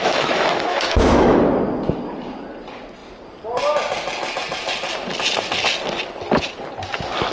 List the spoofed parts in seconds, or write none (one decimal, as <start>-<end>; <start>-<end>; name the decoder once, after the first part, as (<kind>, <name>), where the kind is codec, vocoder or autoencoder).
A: 0.0-1.4 (autoencoder, DAC-VAE)